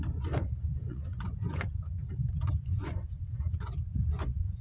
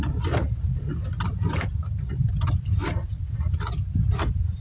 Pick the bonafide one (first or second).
second